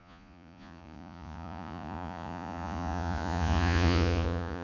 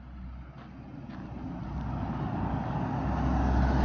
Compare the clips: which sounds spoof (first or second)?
first